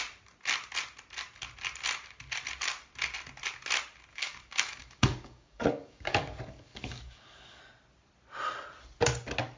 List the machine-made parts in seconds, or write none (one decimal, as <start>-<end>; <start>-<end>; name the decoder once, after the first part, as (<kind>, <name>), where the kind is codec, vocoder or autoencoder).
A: 4.1-7.6 (codec, DAC)